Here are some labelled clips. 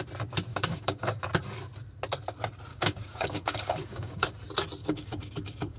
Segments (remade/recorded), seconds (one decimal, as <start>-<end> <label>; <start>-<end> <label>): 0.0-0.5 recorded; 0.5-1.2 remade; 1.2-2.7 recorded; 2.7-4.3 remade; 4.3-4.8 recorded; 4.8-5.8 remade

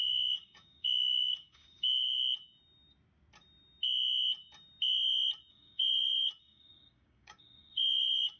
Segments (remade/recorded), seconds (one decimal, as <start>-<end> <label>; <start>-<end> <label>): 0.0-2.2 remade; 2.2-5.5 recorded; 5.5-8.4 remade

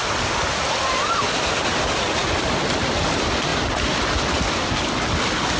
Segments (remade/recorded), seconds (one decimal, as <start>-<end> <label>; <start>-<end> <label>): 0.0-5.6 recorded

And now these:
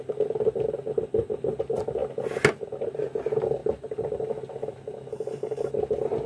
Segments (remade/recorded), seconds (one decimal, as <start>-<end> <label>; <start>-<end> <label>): 0.0-5.1 recorded; 5.1-5.7 remade; 5.7-6.3 recorded